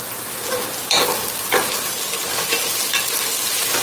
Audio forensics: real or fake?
real